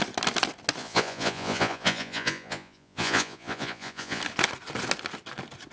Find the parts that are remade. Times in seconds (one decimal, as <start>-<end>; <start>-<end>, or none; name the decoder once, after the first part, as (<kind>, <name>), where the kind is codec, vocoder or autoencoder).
0.8-4.2 (vocoder, Vocos)